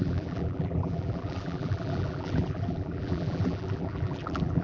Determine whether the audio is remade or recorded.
remade